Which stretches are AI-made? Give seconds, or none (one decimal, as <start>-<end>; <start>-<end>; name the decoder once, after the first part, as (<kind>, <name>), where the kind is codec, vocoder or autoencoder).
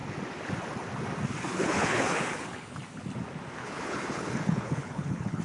1.5-2.8 (codec, HILCodec); 3.6-5.4